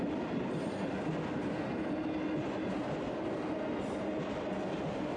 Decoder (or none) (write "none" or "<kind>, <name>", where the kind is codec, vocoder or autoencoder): none